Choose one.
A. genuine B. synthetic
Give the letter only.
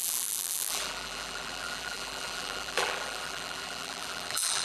B